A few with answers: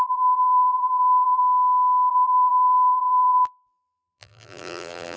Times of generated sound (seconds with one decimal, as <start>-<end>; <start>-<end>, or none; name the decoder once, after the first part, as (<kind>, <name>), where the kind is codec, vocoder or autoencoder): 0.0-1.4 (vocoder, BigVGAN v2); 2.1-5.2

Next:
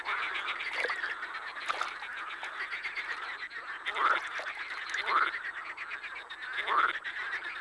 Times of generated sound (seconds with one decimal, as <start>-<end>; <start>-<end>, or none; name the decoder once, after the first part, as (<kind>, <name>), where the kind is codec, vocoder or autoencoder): none

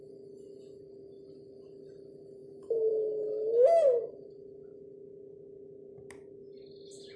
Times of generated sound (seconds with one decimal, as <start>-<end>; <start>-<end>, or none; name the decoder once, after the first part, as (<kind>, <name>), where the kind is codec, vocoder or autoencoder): 2.4-2.9 (autoencoder, DAC-VAE)

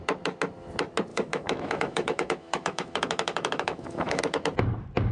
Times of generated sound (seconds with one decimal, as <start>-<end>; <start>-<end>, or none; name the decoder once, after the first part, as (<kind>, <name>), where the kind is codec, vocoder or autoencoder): 1.1-4.2 (autoencoder, DAC-VAE)